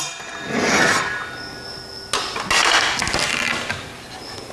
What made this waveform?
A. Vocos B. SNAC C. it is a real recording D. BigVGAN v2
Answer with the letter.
C